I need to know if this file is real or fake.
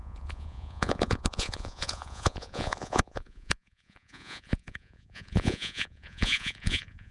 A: fake